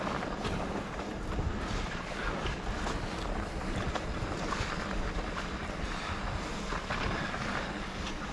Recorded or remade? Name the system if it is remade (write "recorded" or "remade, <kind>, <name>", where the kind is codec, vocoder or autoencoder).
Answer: recorded